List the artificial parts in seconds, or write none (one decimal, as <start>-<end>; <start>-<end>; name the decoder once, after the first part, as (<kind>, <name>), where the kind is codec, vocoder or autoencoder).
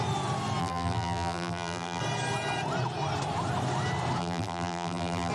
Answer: 0.6-2.0 (vocoder, BigVGAN v2); 4.2-5.3